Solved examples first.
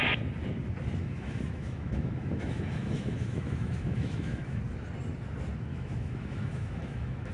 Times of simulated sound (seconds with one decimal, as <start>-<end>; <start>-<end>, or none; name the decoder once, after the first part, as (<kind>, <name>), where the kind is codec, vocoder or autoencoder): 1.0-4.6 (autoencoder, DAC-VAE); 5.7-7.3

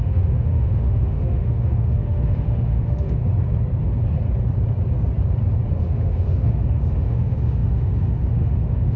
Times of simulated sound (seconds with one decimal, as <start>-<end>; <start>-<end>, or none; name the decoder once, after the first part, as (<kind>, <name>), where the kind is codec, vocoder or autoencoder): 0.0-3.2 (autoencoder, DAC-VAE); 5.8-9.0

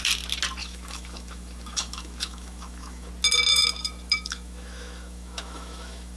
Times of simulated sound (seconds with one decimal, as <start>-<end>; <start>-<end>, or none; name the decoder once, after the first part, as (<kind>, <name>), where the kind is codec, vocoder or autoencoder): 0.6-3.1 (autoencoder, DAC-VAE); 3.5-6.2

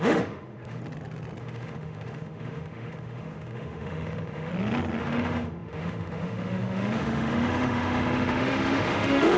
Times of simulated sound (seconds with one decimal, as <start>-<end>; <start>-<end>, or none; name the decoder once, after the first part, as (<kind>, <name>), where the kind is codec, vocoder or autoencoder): 0.0-0.8 (autoencoder, DAC-VAE); 1.4-4.5; 5.0-9.4

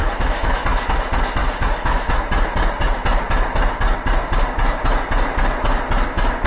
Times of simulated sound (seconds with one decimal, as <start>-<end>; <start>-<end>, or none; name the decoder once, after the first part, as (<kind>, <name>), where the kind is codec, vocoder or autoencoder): 0.0-0.6 (autoencoder, DAC-VAE); 1.4-2.2